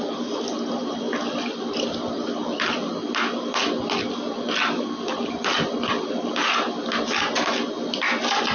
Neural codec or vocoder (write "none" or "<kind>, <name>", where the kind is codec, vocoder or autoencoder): none